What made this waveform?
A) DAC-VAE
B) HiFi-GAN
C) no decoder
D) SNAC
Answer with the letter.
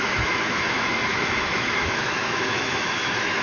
A